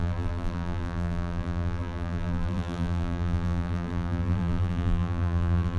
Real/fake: fake